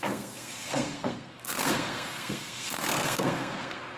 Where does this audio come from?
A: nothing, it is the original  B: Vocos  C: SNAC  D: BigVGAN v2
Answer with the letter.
C